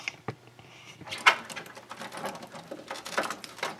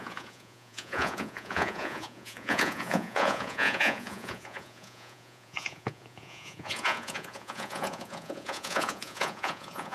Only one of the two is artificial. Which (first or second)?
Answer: second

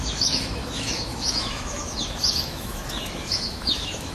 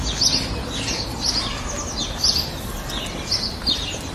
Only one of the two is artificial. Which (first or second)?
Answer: first